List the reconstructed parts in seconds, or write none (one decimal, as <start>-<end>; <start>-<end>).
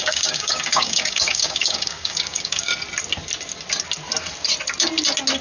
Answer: 0.0-2.7